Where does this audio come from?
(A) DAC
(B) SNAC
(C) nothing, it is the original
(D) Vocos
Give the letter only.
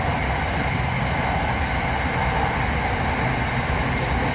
C